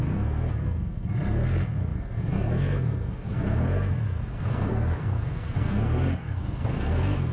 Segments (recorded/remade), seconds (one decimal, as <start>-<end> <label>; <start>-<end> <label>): 0.0-7.3 remade